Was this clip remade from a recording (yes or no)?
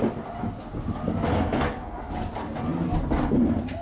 no